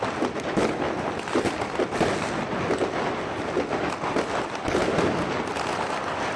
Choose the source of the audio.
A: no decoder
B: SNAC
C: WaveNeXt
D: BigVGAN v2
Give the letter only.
A